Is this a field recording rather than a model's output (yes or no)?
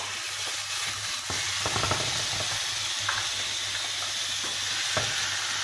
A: yes